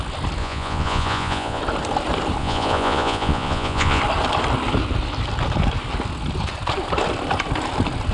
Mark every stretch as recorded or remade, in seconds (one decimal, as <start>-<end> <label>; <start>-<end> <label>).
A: 0.0-0.4 recorded; 0.4-1.6 remade; 1.6-2.4 recorded; 2.4-4.0 remade; 4.0-8.1 recorded